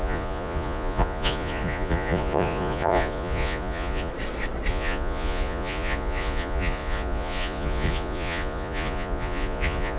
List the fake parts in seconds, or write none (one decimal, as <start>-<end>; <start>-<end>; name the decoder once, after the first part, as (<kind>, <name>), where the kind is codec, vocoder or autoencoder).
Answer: 0.0-4.1 (vocoder, Vocos); 4.7-10.0